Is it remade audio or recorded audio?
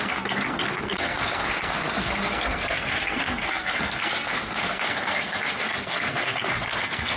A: remade